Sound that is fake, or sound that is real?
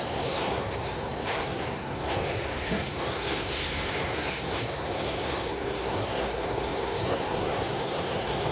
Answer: fake